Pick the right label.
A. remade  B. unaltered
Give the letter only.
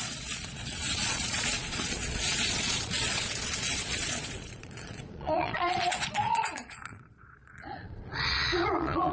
A